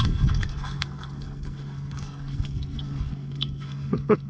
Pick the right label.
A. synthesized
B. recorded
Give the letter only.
A